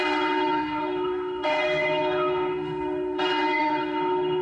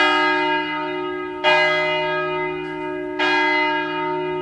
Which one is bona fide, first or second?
second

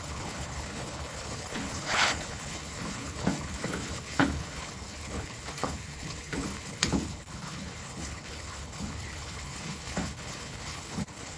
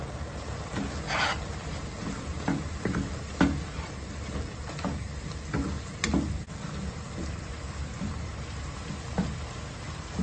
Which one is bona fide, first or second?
second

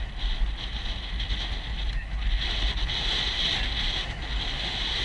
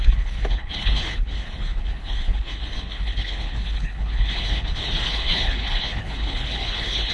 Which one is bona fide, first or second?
first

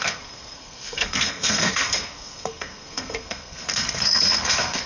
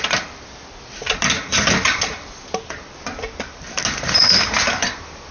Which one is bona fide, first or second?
second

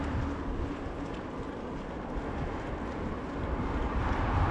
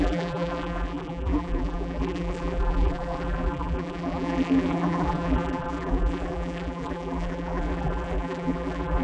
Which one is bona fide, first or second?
first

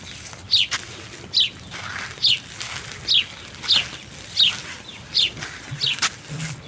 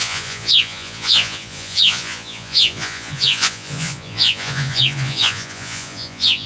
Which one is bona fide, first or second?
first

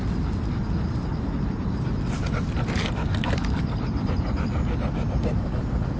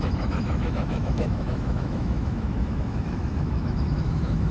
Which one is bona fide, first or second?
first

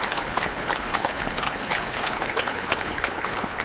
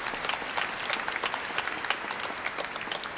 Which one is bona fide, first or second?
second